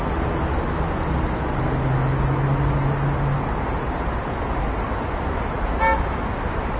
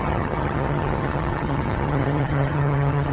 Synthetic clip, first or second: second